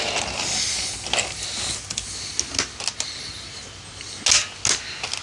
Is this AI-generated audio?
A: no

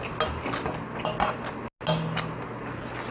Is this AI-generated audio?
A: no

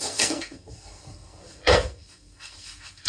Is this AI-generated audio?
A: yes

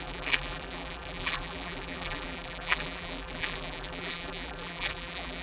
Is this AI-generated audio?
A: yes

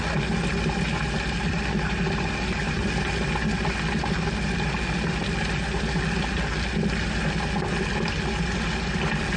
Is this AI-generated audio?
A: no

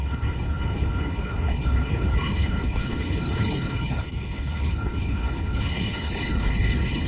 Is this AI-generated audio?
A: yes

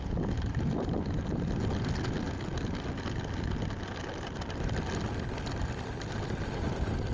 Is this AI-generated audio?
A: no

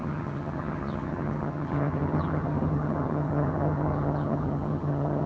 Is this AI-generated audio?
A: yes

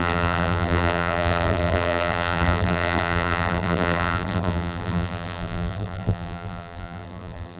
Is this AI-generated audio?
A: yes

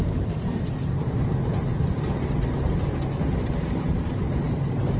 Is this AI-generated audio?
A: yes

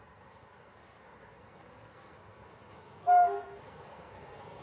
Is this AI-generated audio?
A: yes